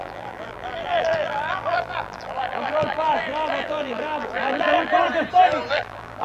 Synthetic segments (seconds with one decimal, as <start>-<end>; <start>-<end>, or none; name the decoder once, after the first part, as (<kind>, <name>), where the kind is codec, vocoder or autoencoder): 0.0-4.9 (vocoder, BigVGAN v2); 5.7-6.2